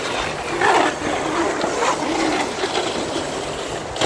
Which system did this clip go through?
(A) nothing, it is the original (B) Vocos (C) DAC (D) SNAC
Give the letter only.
A